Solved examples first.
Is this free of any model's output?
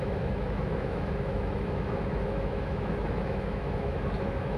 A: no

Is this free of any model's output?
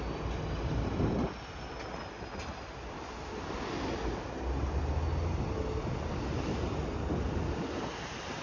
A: yes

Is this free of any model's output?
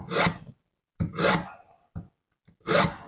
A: yes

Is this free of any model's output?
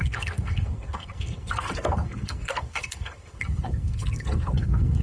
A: no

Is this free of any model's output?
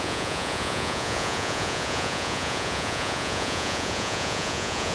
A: no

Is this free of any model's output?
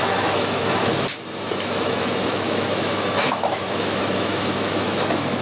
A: no